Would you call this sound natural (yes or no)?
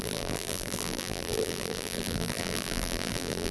no